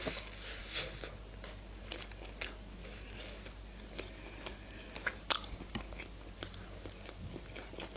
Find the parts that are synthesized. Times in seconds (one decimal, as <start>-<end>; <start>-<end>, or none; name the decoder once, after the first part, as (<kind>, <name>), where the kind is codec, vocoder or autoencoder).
none